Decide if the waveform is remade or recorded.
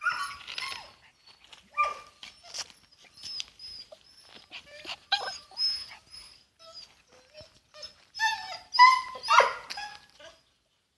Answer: recorded